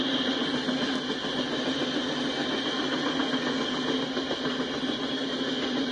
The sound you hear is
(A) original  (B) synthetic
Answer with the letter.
A